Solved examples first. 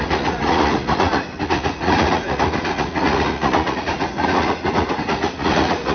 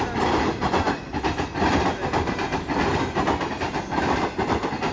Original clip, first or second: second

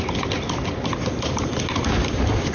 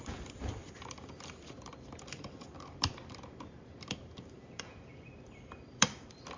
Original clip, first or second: first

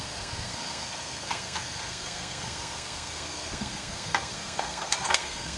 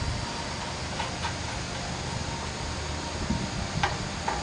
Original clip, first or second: second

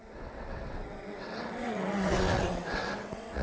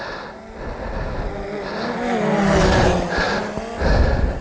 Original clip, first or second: second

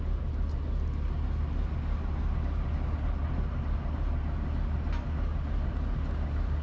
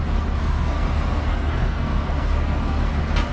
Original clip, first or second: first